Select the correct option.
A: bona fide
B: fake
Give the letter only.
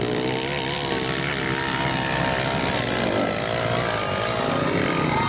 A